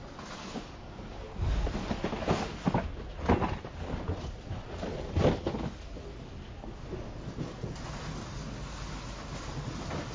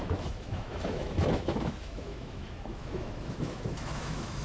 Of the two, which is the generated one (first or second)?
second